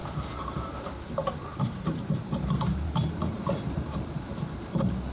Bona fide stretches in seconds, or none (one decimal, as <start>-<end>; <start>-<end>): 0.0-1.5; 3.1-5.1